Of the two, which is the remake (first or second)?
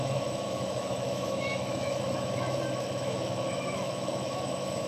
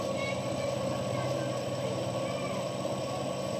first